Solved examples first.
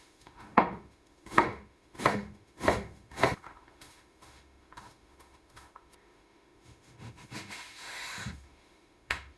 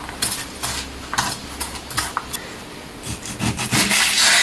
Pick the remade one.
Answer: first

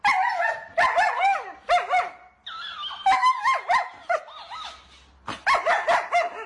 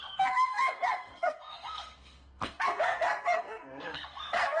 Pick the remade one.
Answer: second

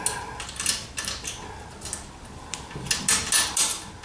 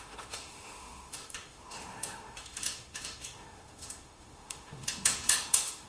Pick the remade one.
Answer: second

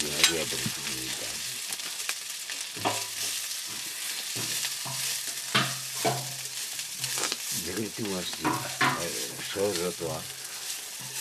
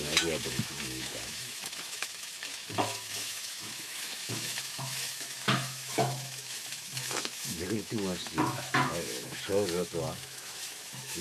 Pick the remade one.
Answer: second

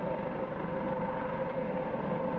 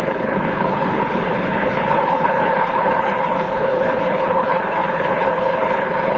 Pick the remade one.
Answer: second